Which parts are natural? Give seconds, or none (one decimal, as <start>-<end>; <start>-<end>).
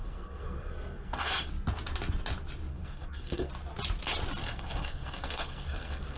1.5-2.7; 3.5-4.4